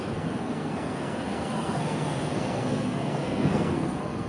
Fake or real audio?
fake